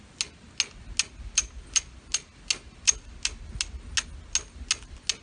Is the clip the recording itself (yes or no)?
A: yes